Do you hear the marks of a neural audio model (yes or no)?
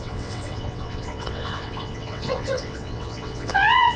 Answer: yes